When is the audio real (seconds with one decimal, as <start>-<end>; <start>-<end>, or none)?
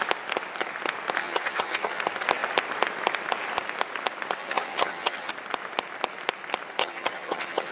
0.0-1.2; 2.0-4.4; 5.3-6.8